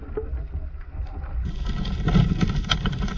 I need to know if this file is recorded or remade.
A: recorded